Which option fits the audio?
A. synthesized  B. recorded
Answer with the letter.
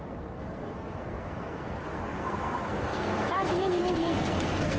A